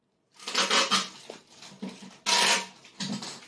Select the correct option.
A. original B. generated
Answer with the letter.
A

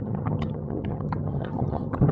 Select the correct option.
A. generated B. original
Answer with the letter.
A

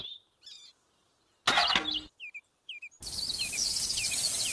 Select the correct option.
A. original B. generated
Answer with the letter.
A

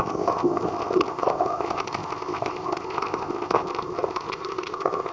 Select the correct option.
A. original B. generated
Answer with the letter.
B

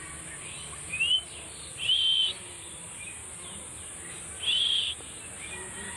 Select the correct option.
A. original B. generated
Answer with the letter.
A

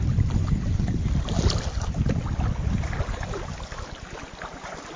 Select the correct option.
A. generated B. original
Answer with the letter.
B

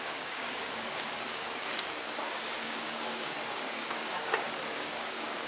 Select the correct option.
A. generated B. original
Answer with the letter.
A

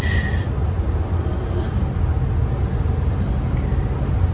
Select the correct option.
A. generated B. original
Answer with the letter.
B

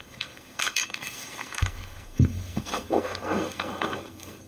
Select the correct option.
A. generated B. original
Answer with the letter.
A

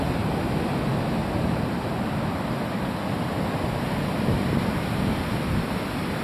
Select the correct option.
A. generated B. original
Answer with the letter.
B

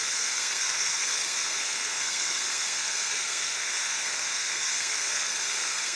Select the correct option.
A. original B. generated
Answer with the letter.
B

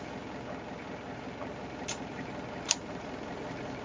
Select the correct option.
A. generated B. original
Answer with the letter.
B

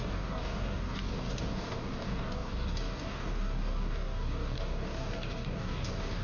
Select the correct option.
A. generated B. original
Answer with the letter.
A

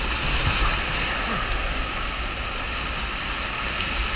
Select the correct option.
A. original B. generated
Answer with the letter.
A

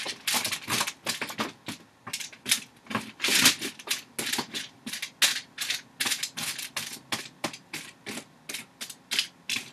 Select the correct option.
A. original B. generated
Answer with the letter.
A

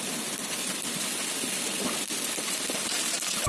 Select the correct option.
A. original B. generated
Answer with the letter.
A